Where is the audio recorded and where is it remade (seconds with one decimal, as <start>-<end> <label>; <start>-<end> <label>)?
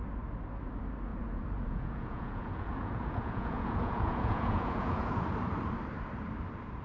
0.0-1.1 recorded; 1.1-5.2 remade; 5.2-6.8 recorded